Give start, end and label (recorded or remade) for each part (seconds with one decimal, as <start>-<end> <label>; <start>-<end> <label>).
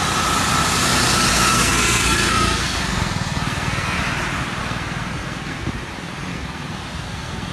0.0-1.3 recorded; 1.3-4.0 remade; 4.0-4.6 recorded; 4.6-5.7 remade; 5.7-6.3 recorded; 6.3-7.5 remade